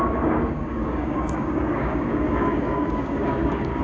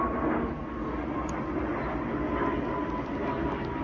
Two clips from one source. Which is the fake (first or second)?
first